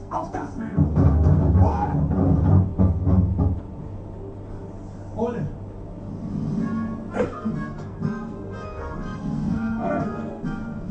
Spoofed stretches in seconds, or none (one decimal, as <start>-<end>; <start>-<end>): 0.0-1.9; 2.8-3.3; 7.2-10.9